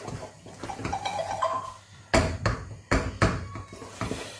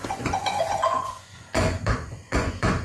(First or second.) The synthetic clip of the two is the second